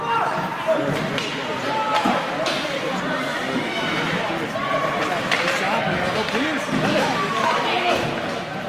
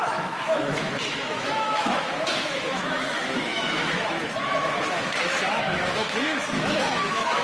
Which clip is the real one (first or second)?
first